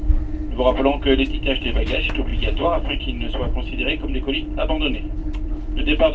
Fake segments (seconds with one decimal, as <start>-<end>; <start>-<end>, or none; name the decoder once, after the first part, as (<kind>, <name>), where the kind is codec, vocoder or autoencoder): 2.3-3.3 (vocoder, BigVGAN v2); 3.7-4.2; 4.9-5.5